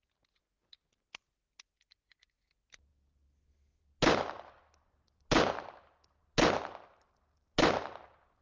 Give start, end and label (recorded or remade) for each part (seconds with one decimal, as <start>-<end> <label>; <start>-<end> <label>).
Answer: 0.0-8.4 recorded